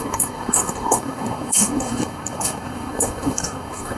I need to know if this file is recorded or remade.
remade